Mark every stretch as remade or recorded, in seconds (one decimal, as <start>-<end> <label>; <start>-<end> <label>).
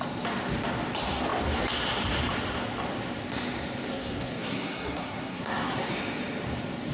0.0-3.9 recorded; 3.9-5.9 remade; 5.9-6.9 recorded